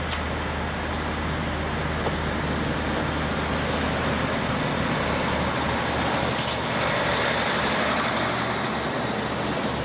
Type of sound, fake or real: real